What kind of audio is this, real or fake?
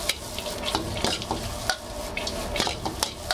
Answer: real